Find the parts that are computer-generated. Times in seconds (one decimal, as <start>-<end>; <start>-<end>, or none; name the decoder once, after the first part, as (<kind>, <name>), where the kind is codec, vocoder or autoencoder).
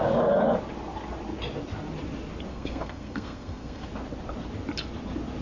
2.5-3.9 (codec, SNAC)